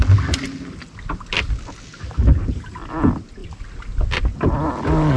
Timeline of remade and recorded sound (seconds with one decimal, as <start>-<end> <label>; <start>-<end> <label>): 0.0-5.2 recorded